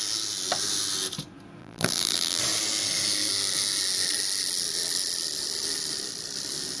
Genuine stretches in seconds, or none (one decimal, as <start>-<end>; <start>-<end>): 0.0-1.6; 2.4-6.8